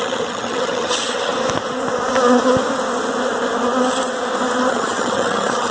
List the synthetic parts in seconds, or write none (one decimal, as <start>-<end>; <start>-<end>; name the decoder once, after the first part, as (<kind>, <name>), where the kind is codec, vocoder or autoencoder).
0.0-1.3 (vocoder, HiFi-GAN); 4.7-5.7